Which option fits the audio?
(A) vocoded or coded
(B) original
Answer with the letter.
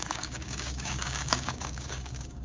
A